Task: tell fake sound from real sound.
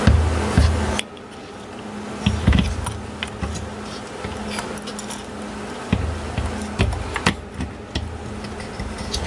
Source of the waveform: real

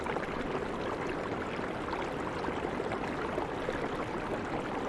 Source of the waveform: real